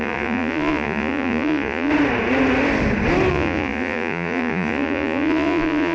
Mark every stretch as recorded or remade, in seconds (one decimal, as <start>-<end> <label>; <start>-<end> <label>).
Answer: 0.0-1.9 remade; 1.9-3.3 recorded; 3.3-5.9 remade